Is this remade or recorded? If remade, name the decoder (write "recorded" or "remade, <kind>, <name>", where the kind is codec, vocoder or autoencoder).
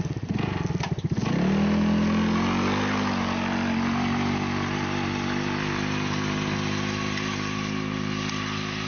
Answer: recorded